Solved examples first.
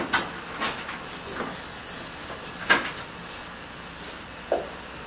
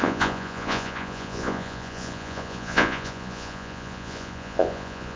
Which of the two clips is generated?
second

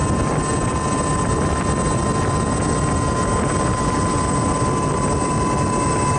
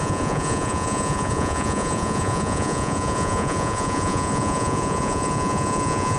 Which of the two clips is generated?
second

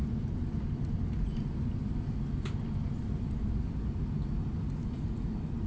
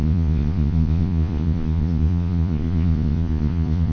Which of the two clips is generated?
second